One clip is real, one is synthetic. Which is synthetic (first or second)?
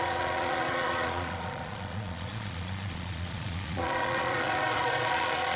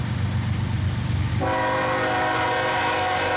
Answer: first